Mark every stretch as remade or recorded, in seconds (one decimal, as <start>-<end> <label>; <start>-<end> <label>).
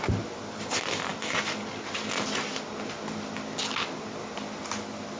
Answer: 0.0-5.2 recorded